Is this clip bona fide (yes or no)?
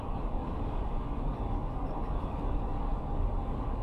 no